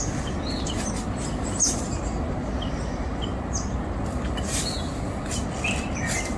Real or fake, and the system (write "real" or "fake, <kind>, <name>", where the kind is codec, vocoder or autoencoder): real